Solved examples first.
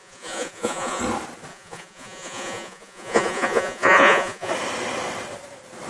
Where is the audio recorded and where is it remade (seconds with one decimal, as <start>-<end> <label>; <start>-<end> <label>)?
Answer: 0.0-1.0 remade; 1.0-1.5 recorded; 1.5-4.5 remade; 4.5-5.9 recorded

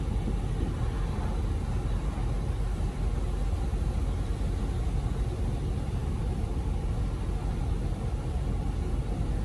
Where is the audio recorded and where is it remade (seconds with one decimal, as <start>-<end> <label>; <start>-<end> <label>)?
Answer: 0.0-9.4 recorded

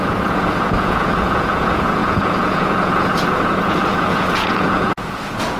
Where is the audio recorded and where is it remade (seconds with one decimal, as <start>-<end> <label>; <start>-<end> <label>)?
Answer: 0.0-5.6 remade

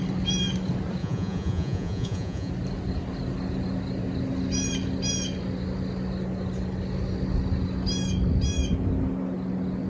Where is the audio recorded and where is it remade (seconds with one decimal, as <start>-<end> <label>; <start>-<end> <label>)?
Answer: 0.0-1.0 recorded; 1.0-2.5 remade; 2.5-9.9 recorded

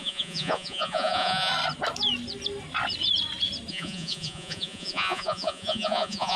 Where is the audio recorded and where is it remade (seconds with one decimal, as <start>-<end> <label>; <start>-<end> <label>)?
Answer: 0.0-1.5 remade; 1.5-3.7 recorded; 3.7-6.4 remade

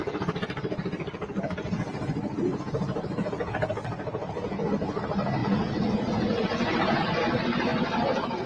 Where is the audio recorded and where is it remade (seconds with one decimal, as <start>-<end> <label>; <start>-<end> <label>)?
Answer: 0.0-5.4 recorded; 5.4-7.0 remade; 7.0-8.5 recorded

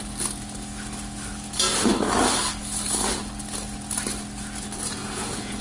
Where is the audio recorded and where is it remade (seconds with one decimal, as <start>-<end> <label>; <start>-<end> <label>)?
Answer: 0.0-5.0 recorded; 5.0-5.6 remade

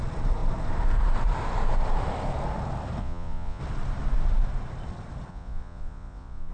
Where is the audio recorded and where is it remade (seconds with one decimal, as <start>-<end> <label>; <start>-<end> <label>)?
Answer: 0.0-3.0 recorded; 3.0-3.6 remade; 3.6-5.3 recorded; 5.3-6.5 remade